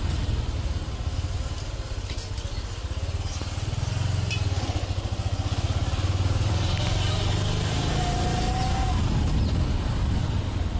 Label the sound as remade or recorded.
recorded